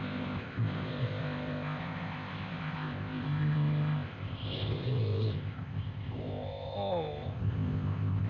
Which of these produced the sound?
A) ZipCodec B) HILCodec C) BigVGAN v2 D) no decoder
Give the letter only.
A